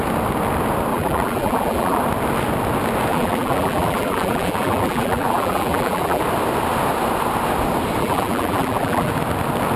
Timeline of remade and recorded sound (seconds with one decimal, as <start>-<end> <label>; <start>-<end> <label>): 0.0-0.9 recorded; 0.9-2.0 remade; 2.0-3.1 recorded; 3.1-6.2 remade; 6.2-8.0 recorded; 8.0-9.1 remade; 9.1-9.8 recorded